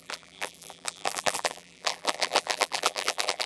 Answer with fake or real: fake